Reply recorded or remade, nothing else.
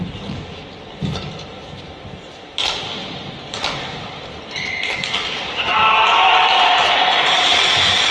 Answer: remade